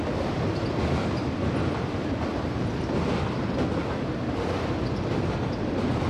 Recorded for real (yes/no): yes